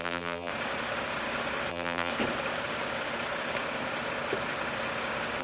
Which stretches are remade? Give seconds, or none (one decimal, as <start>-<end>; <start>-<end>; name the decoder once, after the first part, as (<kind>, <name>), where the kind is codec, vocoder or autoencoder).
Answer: 0.0-0.5 (vocoder, BigVGAN v2); 1.7-2.1